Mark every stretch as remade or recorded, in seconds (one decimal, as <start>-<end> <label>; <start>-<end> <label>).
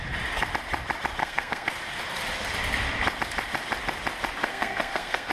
0.0-1.2 recorded; 1.2-1.7 remade; 1.7-4.4 recorded; 4.4-5.3 remade